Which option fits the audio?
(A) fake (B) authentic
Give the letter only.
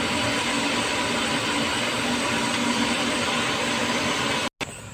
B